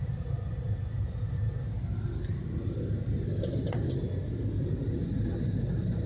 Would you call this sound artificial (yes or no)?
no